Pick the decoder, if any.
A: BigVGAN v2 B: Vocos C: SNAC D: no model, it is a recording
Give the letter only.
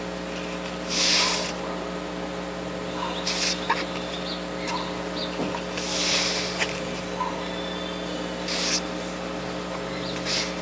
D